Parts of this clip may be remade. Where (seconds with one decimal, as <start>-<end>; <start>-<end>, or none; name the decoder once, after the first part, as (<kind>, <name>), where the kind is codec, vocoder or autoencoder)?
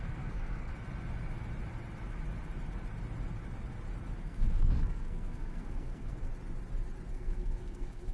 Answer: 0.0-0.7 (codec, SNAC); 4.2-6.3; 7.1-8.1